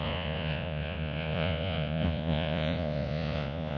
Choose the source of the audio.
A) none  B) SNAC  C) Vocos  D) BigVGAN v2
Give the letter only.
C